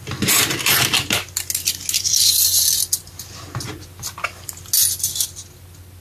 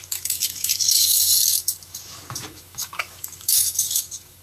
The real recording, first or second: first